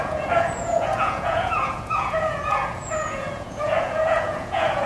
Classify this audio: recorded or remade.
remade